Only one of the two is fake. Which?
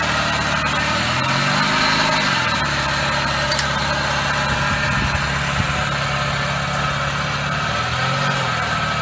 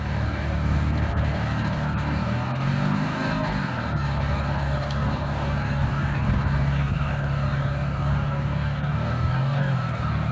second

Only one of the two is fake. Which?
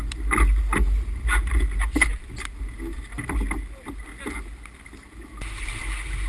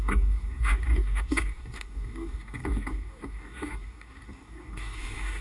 second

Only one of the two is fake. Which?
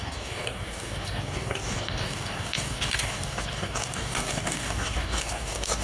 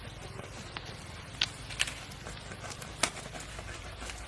first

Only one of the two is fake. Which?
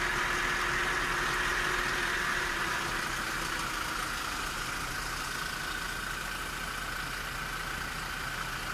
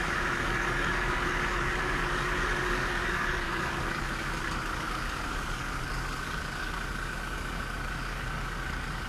second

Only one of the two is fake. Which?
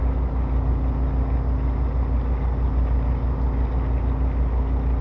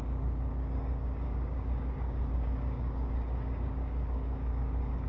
second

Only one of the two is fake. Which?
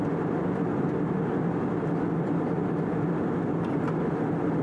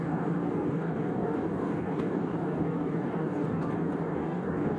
second